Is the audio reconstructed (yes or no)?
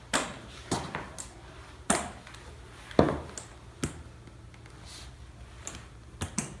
no